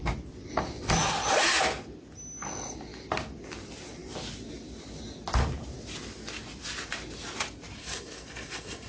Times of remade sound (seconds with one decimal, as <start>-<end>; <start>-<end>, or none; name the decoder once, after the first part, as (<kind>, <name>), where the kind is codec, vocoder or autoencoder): 7.8-8.9 (codec, SNAC)